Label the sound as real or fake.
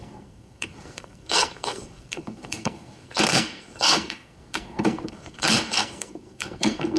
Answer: fake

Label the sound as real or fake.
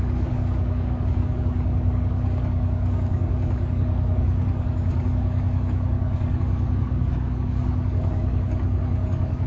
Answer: fake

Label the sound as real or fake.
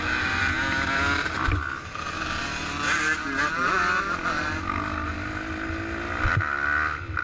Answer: real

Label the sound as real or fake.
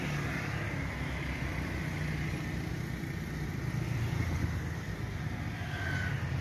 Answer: real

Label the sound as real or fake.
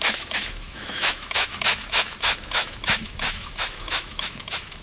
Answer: fake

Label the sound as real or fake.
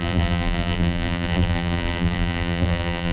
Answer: fake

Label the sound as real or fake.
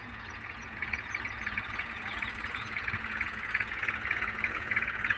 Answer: fake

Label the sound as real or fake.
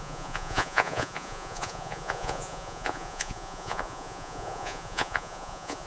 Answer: fake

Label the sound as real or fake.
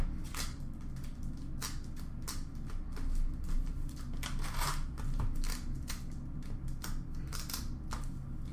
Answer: real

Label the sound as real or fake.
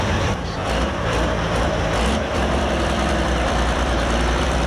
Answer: fake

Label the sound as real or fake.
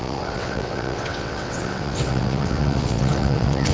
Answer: fake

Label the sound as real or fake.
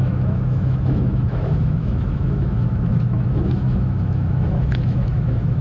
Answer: fake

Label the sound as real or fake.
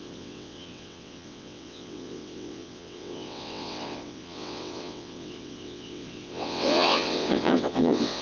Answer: fake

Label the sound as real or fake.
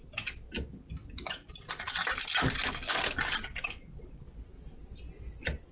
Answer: real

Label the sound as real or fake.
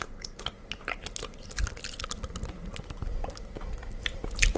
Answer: real